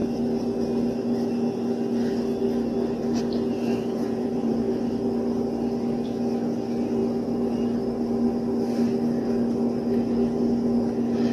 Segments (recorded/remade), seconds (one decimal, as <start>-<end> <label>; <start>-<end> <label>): 0.0-3.7 recorded; 3.7-4.9 remade; 4.9-11.3 recorded